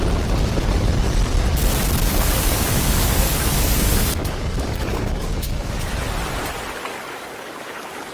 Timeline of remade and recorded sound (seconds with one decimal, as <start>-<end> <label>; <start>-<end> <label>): 0.0-2.0 recorded; 2.0-5.9 remade; 5.9-6.9 recorded; 6.9-8.1 remade